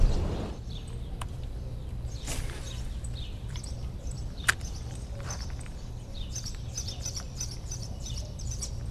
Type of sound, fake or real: fake